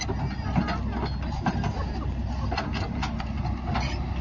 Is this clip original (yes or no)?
yes